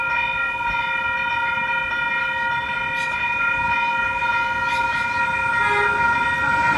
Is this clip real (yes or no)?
yes